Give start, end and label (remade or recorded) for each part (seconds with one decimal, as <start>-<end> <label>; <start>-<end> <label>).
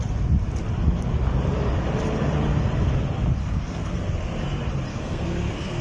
0.0-3.4 recorded; 3.4-3.9 remade; 3.9-4.9 recorded; 4.9-5.8 remade